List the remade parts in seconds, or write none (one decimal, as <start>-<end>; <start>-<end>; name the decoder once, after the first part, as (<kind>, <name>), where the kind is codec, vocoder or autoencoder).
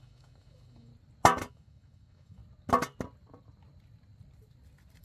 0.0-0.9 (autoencoder, DAC-VAE); 1.5-2.4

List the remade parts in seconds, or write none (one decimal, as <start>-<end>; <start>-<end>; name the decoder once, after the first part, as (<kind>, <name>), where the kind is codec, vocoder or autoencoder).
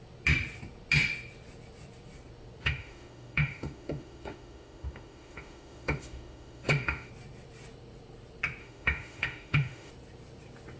2.6-7.1 (autoencoder, DAC-VAE); 8.6-9.9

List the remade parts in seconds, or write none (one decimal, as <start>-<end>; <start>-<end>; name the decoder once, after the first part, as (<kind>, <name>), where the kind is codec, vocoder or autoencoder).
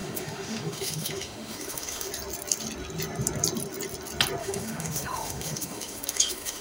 0.0-2.1 (autoencoder, DAC-VAE); 4.4-6.6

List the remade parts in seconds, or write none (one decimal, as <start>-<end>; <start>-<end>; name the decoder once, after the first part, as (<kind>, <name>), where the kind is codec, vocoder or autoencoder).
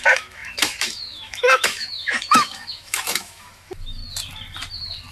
0.0-4.0 (autoencoder, DAC-VAE)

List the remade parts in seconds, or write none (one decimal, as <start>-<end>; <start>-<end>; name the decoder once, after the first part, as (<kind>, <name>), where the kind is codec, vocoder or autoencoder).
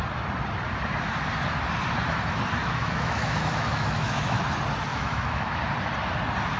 2.6-4.4 (autoencoder, DAC-VAE); 4.9-5.6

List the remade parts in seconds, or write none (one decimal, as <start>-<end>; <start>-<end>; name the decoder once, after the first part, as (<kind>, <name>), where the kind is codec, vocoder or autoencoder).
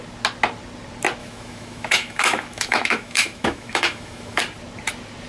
1.2-4.4 (autoencoder, DAC-VAE)